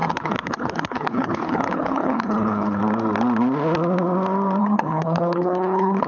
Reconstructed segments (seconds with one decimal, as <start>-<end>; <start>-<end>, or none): 0.0-2.8; 4.6-6.1